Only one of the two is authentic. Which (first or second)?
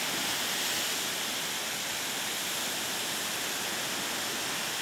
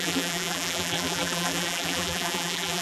first